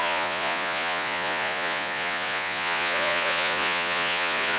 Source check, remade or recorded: remade